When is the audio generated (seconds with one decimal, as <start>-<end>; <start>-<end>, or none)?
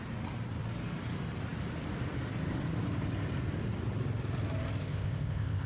4.8-5.7